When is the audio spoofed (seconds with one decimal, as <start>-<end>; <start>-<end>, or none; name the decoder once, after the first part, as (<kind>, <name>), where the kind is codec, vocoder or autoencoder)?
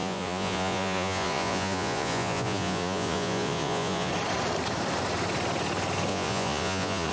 0.0-4.1 (vocoder, Vocos); 6.1-7.1